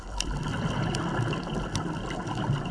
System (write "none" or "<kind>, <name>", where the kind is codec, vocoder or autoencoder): none